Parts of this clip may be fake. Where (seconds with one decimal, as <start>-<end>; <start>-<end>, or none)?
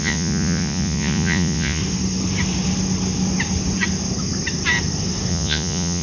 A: 0.0-1.8; 5.3-6.0